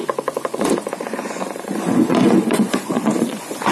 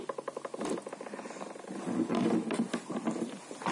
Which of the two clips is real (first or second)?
second